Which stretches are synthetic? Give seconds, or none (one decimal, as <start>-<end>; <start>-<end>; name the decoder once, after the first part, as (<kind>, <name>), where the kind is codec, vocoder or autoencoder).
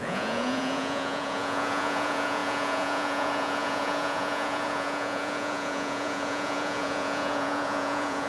0.0-8.3 (vocoder, Vocos)